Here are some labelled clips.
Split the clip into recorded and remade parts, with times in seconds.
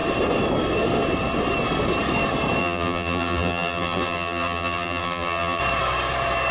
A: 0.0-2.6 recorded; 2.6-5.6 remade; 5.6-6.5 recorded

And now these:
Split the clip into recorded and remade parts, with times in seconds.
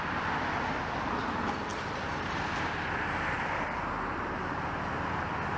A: 0.0-1.7 recorded; 1.7-2.9 remade; 2.9-5.6 recorded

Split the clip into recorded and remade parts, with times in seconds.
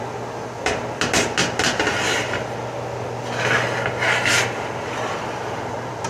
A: 0.0-6.1 recorded